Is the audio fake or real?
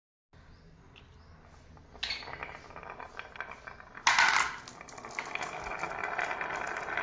real